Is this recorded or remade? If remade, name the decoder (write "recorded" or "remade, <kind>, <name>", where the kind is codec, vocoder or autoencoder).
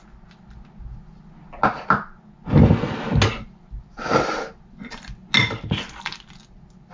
recorded